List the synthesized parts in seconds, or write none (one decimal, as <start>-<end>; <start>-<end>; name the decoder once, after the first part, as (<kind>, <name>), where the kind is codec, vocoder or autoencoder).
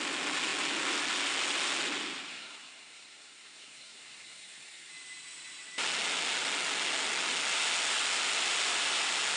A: 2.3-4.9 (codec, SNAC)